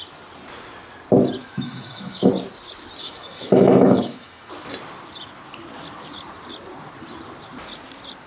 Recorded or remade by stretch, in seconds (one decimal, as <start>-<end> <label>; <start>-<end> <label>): 0.0-1.4 recorded; 1.4-2.3 remade; 2.3-3.0 recorded; 3.0-4.5 remade; 4.5-8.3 recorded